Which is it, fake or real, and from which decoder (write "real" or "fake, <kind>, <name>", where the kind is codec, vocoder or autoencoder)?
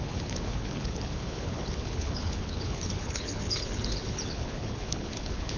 fake, codec, HILCodec